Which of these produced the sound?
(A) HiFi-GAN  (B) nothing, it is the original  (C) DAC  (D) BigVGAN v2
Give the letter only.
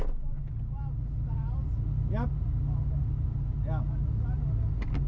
B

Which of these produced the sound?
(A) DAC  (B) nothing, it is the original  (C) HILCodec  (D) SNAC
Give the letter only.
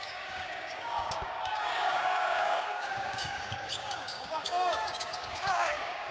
A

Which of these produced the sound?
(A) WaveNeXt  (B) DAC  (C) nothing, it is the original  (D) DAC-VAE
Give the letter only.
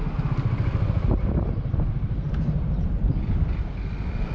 C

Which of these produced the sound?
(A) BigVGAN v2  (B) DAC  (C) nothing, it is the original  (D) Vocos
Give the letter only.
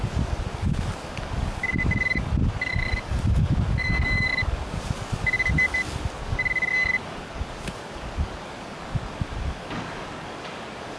B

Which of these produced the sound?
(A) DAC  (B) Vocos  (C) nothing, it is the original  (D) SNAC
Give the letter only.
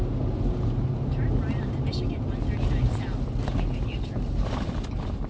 C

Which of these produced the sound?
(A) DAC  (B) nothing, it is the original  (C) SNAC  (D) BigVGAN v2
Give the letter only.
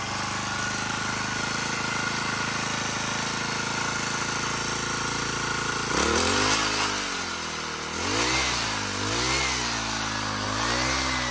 B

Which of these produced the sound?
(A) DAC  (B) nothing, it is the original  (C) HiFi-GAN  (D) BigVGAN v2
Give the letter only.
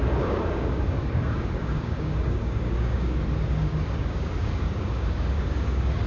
A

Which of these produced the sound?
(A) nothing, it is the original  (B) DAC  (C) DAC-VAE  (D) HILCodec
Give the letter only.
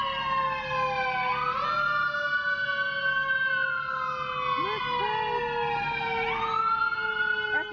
A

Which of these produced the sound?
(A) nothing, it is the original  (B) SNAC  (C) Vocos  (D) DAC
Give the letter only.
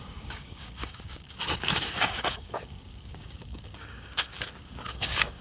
D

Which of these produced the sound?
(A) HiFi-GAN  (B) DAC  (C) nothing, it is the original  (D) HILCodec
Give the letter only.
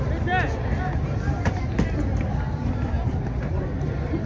C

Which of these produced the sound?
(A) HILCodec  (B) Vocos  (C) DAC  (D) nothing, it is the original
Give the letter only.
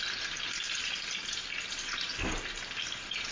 D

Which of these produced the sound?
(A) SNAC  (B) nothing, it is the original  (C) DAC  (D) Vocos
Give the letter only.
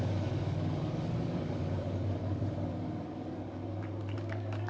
C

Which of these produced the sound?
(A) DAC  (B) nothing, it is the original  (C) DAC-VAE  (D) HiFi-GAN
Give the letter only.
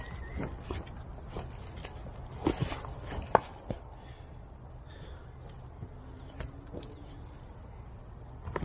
B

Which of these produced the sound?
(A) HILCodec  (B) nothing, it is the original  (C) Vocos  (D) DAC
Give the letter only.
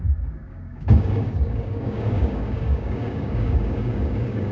D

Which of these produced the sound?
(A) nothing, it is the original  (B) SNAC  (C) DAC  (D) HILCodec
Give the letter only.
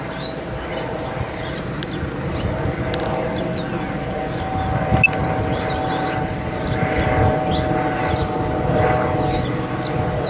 A